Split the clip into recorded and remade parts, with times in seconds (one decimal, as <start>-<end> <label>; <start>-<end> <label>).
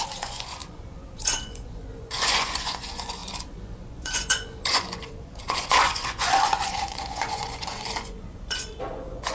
0.0-9.3 remade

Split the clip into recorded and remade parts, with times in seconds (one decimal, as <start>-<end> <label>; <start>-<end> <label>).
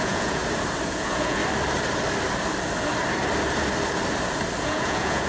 0.0-0.4 remade; 0.4-0.9 recorded; 0.9-1.4 remade; 1.4-4.6 recorded; 4.6-5.3 remade